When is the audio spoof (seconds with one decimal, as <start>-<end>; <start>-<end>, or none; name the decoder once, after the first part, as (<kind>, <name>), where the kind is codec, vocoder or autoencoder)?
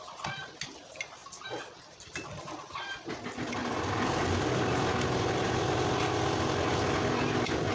1.2-2.4 (vocoder, BigVGAN v2); 3.6-4.5